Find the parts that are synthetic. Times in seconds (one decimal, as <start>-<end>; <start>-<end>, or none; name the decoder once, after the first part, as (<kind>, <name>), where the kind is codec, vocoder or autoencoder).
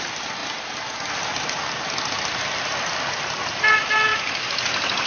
none